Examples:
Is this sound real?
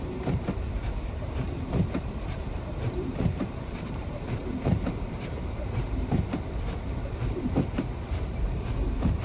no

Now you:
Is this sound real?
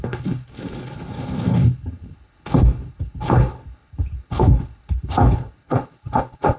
no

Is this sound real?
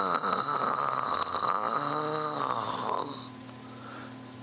yes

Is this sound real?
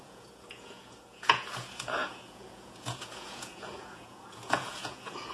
no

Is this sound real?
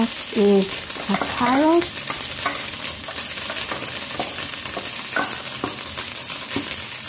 yes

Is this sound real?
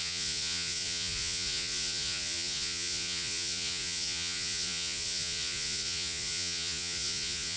no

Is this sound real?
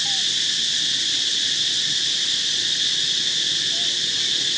yes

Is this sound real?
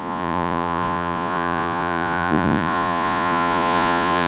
no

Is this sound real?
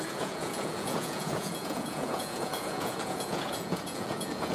no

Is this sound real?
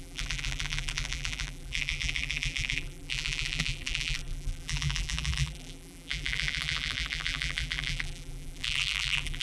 no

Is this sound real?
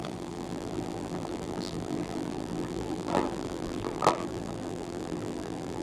no